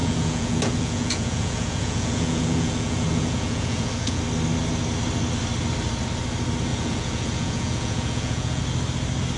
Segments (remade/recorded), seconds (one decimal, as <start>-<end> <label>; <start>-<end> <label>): 0.0-4.2 remade; 4.2-6.7 recorded; 6.7-8.6 remade; 8.6-9.4 recorded